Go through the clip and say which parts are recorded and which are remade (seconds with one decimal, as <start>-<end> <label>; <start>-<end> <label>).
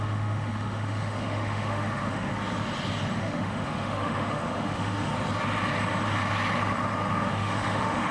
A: 0.0-2.3 remade; 2.3-3.2 recorded; 3.2-5.1 remade; 5.1-7.1 recorded; 7.1-8.1 remade